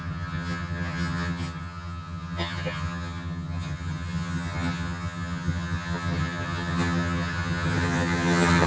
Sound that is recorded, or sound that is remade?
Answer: remade